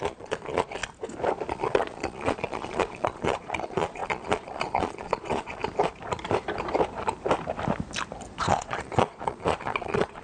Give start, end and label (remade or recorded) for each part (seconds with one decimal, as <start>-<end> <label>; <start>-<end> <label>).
0.0-0.8 remade; 0.8-1.5 recorded; 1.5-5.6 remade; 5.6-8.4 recorded; 8.4-10.2 remade